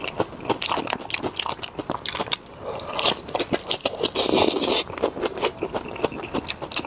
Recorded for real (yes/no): yes